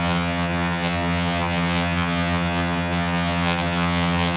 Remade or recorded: remade